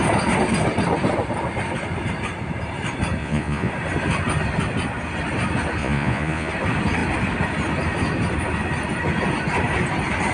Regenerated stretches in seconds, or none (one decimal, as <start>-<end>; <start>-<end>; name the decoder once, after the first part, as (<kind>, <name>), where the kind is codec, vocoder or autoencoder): 3.2-3.7 (vocoder, Vocos); 5.8-6.5

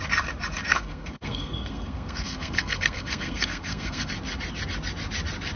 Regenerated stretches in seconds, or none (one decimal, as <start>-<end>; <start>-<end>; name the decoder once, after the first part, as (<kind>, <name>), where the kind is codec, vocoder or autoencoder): 0.7-4.1 (codec, SNAC)

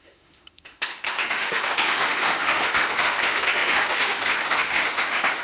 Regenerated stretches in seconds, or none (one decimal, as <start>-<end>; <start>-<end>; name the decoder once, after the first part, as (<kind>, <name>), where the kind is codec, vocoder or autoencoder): 0.0-5.4 (autoencoder, DAC-VAE)

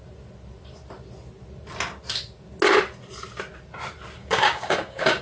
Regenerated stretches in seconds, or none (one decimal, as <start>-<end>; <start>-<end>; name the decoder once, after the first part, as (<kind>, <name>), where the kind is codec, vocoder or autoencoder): 4.2-5.2 (codec, DAC)

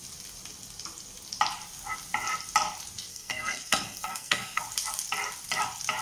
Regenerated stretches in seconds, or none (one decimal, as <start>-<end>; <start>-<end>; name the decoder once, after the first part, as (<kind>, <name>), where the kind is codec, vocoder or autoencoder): 3.1-4.6 (codec, SNAC)

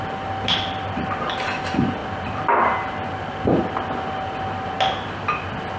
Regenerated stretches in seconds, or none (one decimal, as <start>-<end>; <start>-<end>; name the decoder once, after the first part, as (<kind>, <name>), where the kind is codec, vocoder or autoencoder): 0.0-2.0 (vocoder, BigVGAN v2); 2.6-3.6

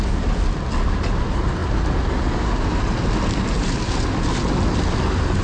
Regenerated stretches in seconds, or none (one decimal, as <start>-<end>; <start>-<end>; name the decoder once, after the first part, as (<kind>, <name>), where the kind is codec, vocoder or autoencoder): none